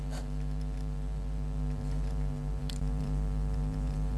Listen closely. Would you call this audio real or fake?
fake